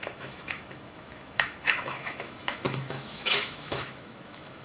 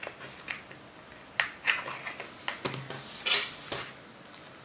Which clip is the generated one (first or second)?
first